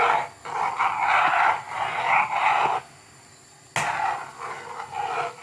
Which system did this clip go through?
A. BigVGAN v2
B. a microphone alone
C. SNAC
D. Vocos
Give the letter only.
B